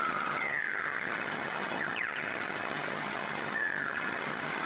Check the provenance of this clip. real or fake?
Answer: fake